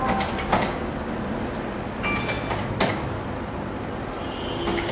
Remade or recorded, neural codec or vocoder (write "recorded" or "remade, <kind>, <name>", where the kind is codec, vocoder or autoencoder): recorded